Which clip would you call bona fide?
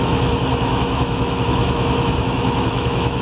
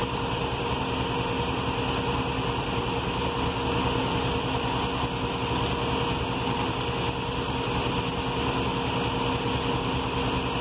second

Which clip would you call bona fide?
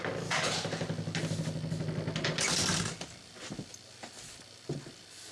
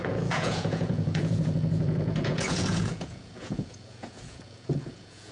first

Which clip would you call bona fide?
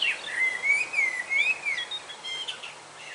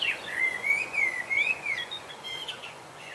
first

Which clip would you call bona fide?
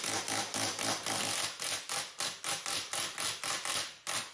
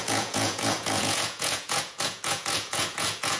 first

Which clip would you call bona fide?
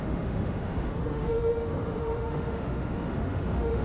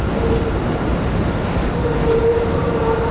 second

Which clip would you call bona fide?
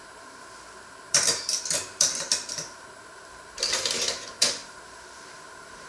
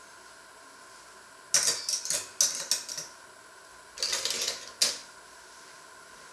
second